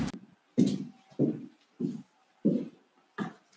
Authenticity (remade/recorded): recorded